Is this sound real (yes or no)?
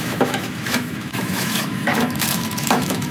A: no